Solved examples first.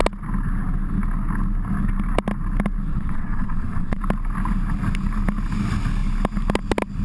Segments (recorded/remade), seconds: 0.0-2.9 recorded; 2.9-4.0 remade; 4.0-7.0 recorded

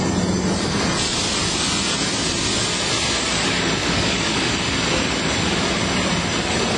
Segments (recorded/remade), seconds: 0.0-3.8 recorded; 3.8-4.5 remade; 4.5-6.8 recorded